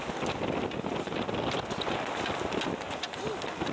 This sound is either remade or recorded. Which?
recorded